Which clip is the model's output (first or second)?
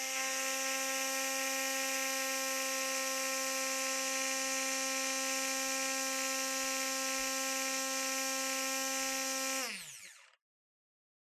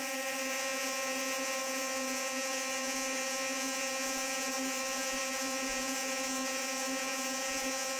second